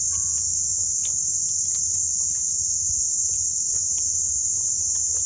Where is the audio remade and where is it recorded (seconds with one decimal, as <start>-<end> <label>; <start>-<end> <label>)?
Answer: 0.0-5.3 recorded